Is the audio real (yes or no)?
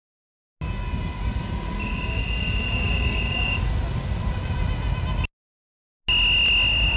yes